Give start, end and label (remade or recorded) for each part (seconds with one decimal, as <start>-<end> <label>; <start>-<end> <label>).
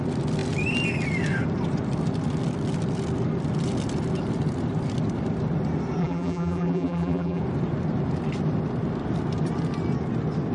0.0-6.0 recorded; 6.0-7.4 remade; 7.4-10.5 recorded